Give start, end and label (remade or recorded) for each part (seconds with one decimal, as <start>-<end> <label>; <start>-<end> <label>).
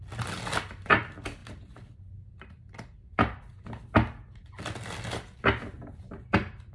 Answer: 0.0-6.7 recorded